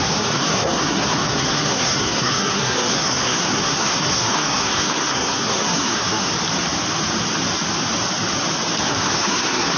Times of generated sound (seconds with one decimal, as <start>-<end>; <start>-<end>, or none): 0.0-6.3; 8.9-9.8